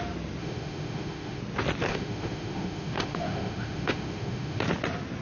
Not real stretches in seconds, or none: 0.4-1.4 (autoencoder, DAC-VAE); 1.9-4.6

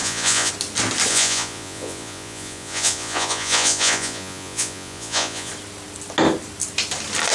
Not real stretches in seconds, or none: 0.0-0.5 (vocoder, Vocos); 1.1-5.5

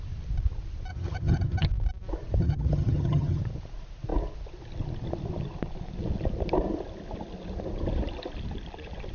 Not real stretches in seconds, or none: 0.9-1.7 (vocoder, HiFi-GAN); 2.4-3.4

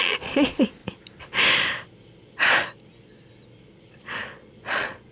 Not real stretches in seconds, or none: 0.0-0.8 (vocoder, Vocos); 3.9-5.1

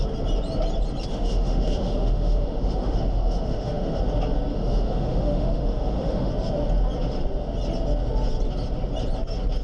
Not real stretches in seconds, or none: 1.1-4.0 (autoencoder, DAC-VAE); 4.5-6.3

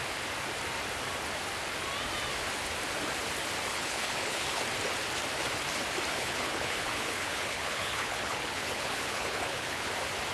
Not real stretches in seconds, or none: 3.7-4.6 (codec, HILCodec); 6.1-9.9

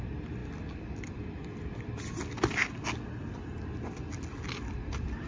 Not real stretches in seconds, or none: none

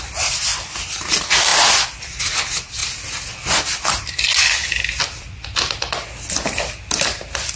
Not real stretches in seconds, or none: none